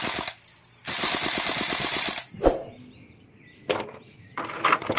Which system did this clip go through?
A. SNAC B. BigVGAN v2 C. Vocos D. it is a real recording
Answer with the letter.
D